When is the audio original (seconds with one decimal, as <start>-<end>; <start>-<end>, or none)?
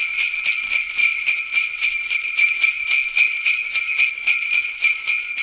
0.0-1.0; 2.6-5.4